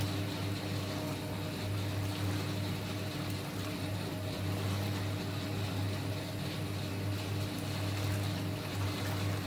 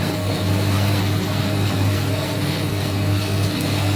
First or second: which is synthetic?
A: second